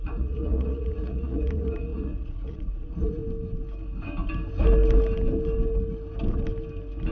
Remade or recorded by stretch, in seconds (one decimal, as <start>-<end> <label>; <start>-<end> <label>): 0.0-3.2 remade; 3.2-7.1 recorded